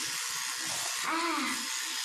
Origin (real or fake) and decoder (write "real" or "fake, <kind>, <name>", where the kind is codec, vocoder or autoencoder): real